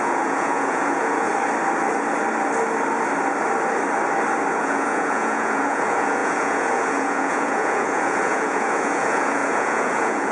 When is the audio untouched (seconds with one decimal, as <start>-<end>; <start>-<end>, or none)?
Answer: 1.3-4.5